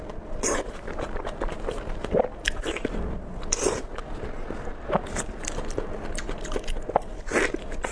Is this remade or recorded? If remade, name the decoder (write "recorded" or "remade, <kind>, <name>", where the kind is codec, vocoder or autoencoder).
recorded